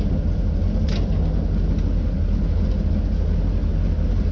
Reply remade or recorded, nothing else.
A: recorded